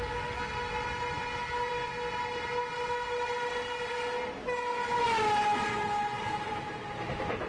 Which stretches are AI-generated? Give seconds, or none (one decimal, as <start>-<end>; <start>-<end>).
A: none